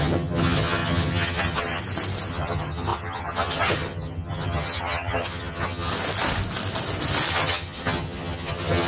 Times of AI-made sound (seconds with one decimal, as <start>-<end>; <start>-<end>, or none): 0.0-1.8; 2.3-5.9; 7.3-8.9